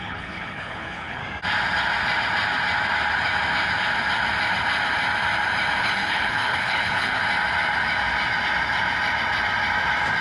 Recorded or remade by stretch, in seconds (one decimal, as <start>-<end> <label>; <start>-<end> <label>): 0.0-1.2 remade; 1.2-5.8 recorded; 5.8-7.2 remade; 7.2-10.2 recorded